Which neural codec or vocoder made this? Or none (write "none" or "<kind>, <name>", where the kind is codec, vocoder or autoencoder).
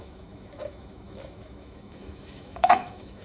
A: autoencoder, DAC-VAE